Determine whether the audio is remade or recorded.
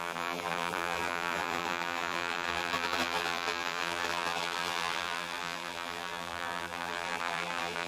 remade